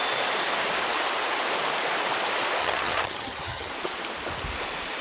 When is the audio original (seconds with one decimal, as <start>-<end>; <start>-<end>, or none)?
0.0-2.6; 3.7-5.0